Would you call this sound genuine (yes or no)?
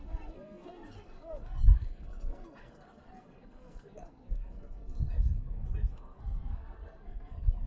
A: no